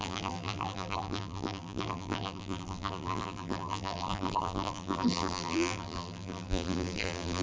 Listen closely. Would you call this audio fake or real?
fake